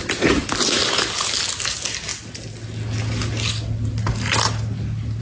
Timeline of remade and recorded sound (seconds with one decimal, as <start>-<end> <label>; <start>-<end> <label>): 0.0-5.2 recorded